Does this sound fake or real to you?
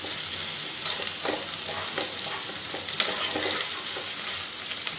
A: real